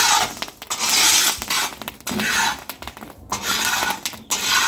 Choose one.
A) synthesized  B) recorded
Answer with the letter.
B